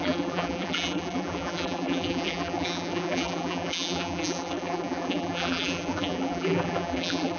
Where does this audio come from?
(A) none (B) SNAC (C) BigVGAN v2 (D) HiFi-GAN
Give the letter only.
C